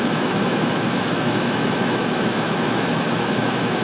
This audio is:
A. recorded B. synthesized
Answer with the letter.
B